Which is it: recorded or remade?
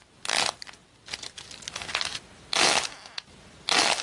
recorded